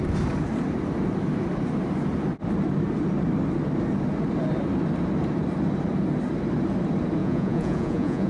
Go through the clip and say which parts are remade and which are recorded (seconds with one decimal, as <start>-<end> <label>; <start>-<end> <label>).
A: 0.0-7.2 recorded; 7.2-8.3 remade